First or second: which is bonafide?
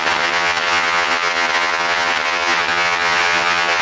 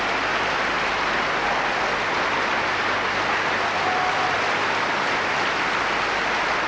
second